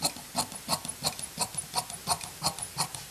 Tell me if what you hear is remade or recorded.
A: recorded